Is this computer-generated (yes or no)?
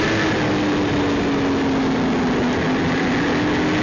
no